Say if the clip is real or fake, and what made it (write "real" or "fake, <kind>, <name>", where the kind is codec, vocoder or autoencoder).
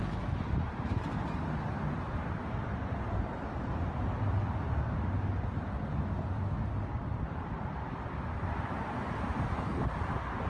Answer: real